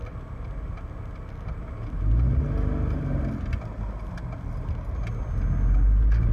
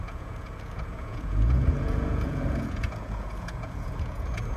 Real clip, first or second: first